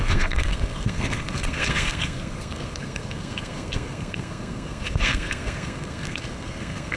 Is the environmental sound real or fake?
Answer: fake